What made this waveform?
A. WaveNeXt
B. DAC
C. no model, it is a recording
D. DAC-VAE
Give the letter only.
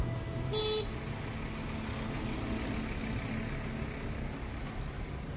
C